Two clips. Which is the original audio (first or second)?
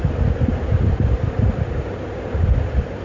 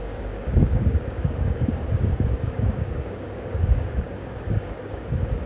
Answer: first